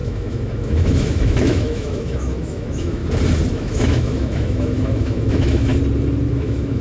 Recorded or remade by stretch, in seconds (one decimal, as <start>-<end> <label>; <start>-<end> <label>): 0.0-3.0 remade; 3.0-3.5 recorded; 3.5-5.7 remade; 5.7-6.3 recorded; 6.3-6.8 remade